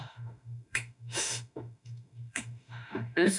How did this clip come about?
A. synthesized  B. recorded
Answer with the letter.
A